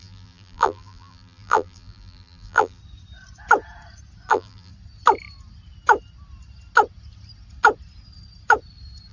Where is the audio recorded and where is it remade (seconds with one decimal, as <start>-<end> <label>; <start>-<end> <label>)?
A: 0.0-2.8 remade; 2.8-4.3 recorded; 4.3-4.7 remade; 4.7-9.1 recorded